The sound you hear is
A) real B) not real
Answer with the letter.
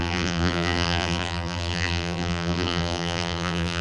B